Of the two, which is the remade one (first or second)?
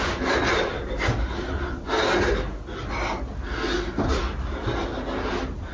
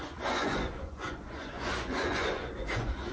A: second